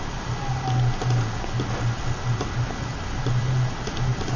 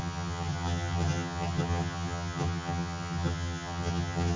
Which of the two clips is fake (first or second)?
second